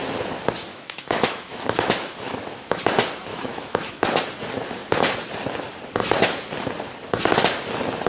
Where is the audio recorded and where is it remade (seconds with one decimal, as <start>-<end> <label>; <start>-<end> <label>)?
0.0-0.7 recorded; 0.7-2.8 remade; 2.8-3.3 recorded; 3.3-4.2 remade; 4.2-8.1 recorded